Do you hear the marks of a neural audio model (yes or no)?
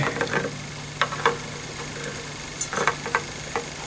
no